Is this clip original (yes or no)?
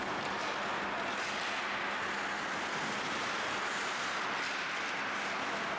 yes